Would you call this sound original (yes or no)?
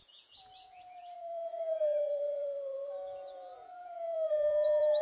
no